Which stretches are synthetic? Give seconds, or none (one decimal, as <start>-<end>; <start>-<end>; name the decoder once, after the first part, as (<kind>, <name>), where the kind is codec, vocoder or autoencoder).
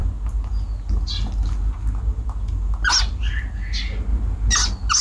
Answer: none